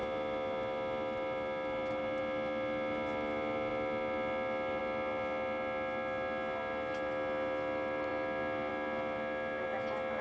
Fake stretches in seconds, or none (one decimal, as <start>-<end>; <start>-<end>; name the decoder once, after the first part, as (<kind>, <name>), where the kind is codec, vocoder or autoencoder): none